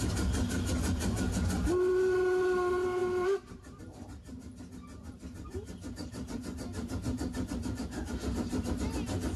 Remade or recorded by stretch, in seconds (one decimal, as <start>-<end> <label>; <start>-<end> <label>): 0.0-9.4 recorded